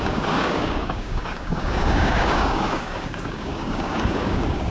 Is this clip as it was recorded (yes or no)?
no